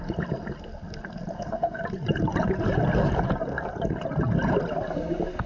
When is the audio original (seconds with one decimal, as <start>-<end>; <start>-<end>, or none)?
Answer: 0.0-1.3; 1.8-5.5